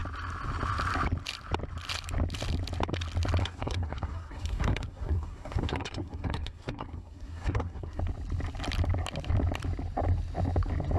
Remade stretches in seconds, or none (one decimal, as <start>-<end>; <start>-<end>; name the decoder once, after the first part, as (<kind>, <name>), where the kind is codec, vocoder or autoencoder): 3.4-8.0 (codec, SNAC)